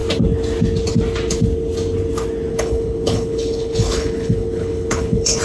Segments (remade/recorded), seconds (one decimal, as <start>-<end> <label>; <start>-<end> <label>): 0.0-2.5 recorded; 2.5-5.4 remade